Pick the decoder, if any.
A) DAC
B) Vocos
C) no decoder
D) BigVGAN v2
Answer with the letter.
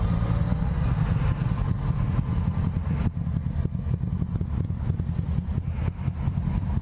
C